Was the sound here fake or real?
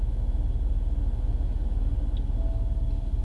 real